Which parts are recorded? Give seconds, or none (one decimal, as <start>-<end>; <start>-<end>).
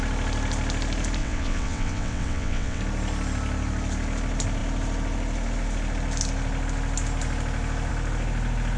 0.0-1.2; 2.8-8.8